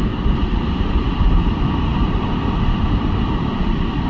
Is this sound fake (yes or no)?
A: no